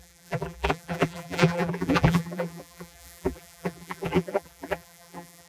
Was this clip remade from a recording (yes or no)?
yes